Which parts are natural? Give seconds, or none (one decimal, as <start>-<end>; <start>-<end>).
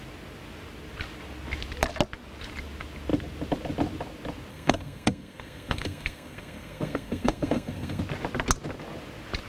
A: 0.0-4.5; 8.0-9.5